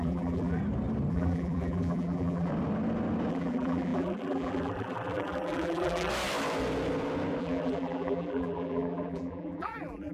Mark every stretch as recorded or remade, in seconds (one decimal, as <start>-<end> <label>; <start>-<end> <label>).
0.0-0.6 remade; 0.6-1.1 recorded; 1.1-2.5 remade; 2.5-3.3 recorded; 3.3-6.1 remade; 6.1-7.4 recorded; 7.4-10.1 remade